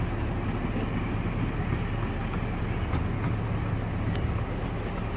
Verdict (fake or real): real